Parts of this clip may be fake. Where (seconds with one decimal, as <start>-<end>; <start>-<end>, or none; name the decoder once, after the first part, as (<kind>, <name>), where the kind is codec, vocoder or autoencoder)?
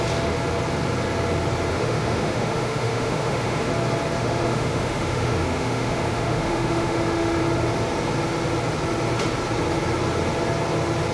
1.7-3.7 (autoencoder, DAC-VAE); 4.2-7.4